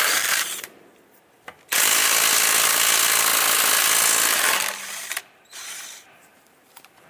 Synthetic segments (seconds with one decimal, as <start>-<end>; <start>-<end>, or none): 0.0-0.9; 5.2-7.1